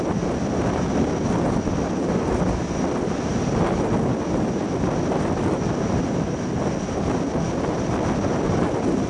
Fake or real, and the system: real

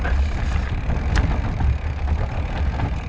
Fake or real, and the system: real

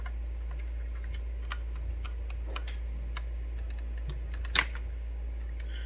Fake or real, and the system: real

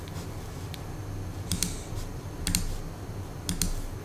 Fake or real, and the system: real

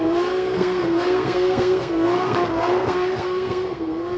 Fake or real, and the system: fake, codec, SNAC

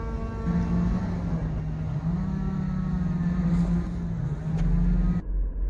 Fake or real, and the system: real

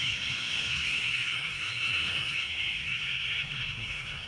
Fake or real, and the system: fake, codec, SNAC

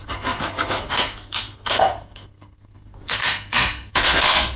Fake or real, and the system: fake, codec, SNAC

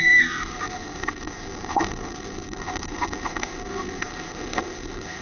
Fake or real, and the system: fake, codec, SNAC